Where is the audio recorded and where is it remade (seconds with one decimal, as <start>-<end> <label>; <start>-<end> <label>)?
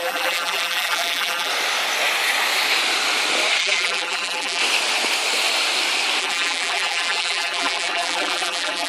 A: 0.0-1.5 remade; 1.5-3.6 recorded; 3.6-4.6 remade; 4.6-6.2 recorded; 6.2-8.9 remade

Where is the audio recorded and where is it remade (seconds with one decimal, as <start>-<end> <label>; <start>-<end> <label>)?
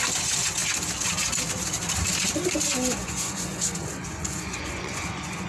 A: 0.0-3.0 recorded; 3.0-5.5 remade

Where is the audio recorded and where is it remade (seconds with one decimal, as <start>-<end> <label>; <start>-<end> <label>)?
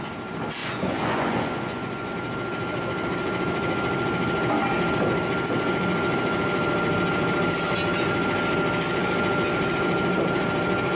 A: 0.0-0.6 recorded; 0.6-2.1 remade; 2.1-11.0 recorded